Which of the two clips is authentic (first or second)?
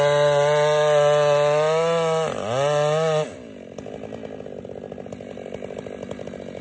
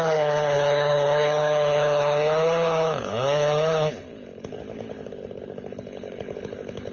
first